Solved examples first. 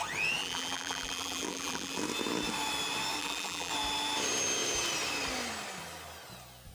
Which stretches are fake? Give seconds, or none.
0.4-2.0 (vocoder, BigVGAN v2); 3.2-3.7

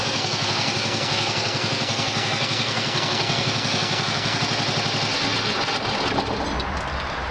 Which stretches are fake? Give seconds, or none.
0.0-4.4 (codec, SNAC)

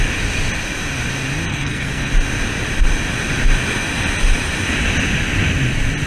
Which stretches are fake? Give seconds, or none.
1.5-2.1 (codec, SNAC)